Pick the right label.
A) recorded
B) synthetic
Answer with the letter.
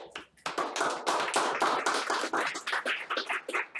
A